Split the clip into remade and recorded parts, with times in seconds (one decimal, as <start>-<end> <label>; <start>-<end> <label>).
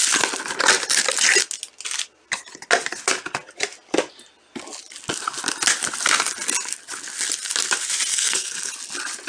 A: 0.0-8.1 recorded; 8.1-8.7 remade; 8.7-9.3 recorded